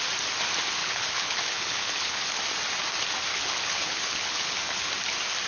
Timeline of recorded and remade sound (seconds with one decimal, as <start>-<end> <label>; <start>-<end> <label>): 0.0-0.8 recorded; 0.8-2.4 remade; 2.4-3.3 recorded; 3.3-4.9 remade; 4.9-5.5 recorded